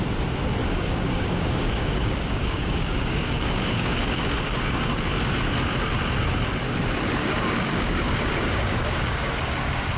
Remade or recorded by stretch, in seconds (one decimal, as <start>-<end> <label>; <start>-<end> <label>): 0.0-0.6 recorded; 0.6-5.3 remade; 5.3-7.2 recorded; 7.2-9.3 remade; 9.3-10.0 recorded